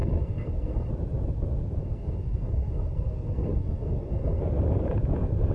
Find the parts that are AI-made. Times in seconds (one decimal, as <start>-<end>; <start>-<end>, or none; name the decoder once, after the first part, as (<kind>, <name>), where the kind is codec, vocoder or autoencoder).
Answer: 0.0-0.9 (codec, SNAC); 1.8-4.4